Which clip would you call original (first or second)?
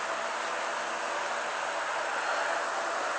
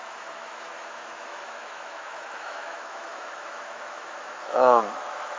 first